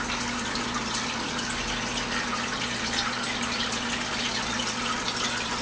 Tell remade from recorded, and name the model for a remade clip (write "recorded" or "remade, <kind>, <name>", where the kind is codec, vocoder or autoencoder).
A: recorded